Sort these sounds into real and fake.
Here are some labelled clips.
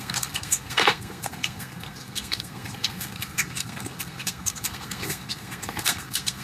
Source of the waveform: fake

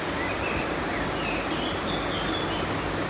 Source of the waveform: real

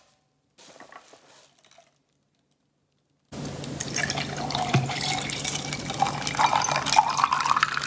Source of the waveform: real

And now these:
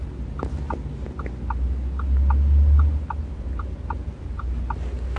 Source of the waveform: real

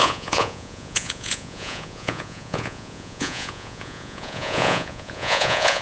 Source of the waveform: fake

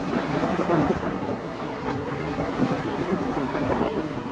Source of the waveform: fake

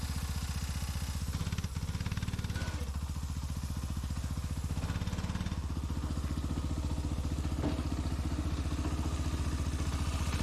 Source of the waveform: real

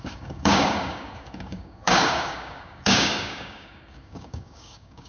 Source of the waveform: fake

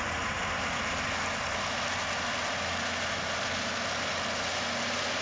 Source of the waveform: real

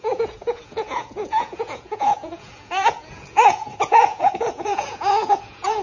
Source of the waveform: fake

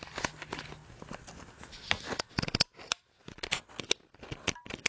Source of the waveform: real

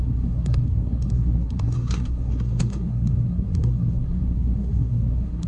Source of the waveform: fake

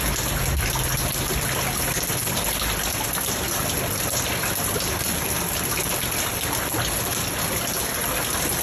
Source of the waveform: real